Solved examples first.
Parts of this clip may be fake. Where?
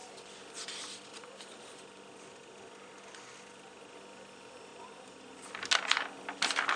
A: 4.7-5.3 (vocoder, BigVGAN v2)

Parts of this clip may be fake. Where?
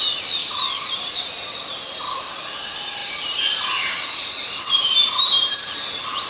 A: 0.4-1.3 (vocoder, BigVGAN v2); 3.0-5.6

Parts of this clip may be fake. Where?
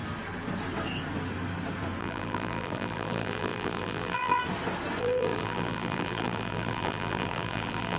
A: 2.0-4.4 (vocoder, BigVGAN v2); 5.0-8.0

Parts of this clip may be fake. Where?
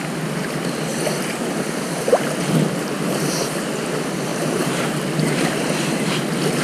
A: 4.3-5.0 (vocoder, BigVGAN v2)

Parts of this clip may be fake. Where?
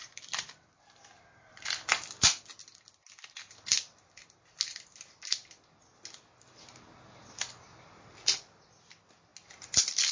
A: 0.0-1.2 (vocoder, BigVGAN v2)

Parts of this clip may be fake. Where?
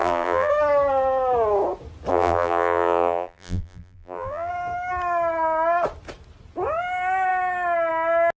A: 0.0-0.5 (vocoder, BigVGAN v2); 2.1-4.5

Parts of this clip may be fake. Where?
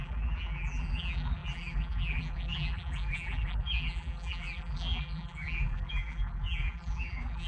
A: 0.0-7.5 (vocoder, BigVGAN v2)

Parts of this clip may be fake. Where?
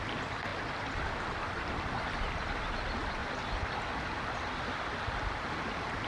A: 3.2-6.1 (vocoder, BigVGAN v2)